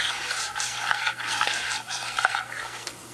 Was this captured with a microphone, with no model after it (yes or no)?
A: no